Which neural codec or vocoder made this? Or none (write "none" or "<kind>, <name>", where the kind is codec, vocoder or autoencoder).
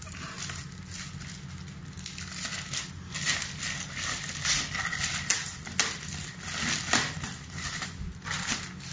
none